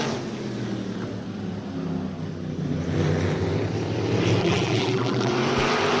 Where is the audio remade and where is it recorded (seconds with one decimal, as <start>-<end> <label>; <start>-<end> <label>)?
0.0-4.4 recorded; 4.4-5.3 remade; 5.3-6.0 recorded